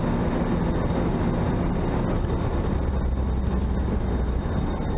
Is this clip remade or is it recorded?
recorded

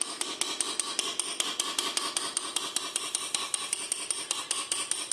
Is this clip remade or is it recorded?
recorded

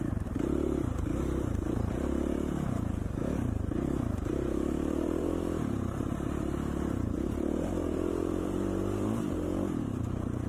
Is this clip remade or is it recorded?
remade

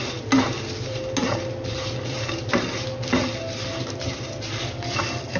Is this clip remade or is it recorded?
recorded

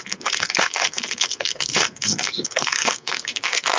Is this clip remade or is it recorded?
remade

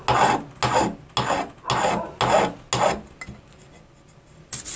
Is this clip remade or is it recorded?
recorded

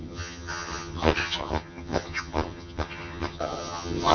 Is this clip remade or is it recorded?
remade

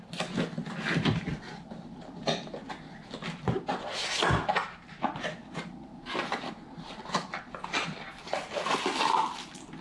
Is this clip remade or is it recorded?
recorded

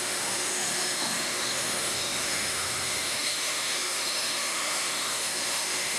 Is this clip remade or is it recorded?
remade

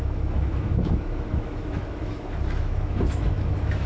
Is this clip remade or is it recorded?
remade